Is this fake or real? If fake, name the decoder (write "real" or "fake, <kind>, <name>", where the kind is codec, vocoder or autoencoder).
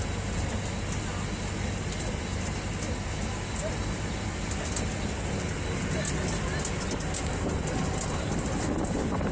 real